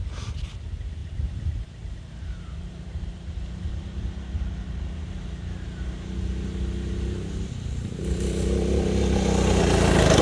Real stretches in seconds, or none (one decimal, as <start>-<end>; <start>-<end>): 0.0-1.0; 3.8-10.2